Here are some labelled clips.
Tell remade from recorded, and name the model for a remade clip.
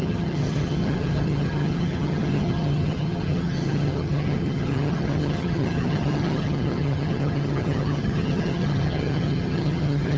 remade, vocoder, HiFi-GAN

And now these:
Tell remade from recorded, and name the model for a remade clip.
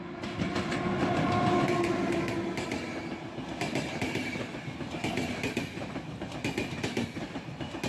recorded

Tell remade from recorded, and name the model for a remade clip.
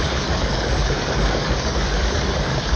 remade, codec, DAC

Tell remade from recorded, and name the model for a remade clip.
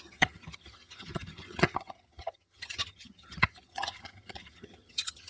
remade, vocoder, HiFi-GAN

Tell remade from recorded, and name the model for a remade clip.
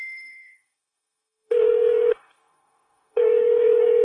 remade, codec, DAC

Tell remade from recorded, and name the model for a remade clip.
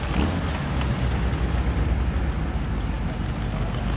recorded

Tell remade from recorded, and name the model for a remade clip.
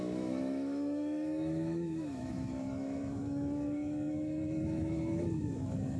remade, autoencoder, DAC-VAE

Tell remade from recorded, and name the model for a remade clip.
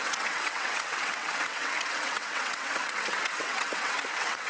remade, vocoder, WaveNeXt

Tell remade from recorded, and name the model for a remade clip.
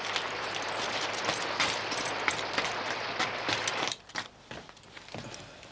recorded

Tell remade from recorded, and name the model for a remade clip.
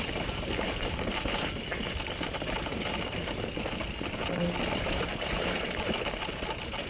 recorded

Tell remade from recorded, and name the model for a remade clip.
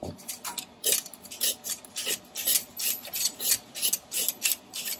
recorded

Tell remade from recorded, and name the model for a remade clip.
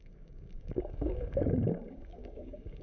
remade, codec, DAC